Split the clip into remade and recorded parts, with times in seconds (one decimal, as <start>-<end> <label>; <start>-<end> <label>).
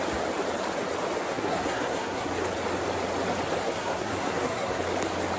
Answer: 0.0-1.3 recorded; 1.3-2.3 remade; 2.3-3.6 recorded; 3.6-4.8 remade; 4.8-5.4 recorded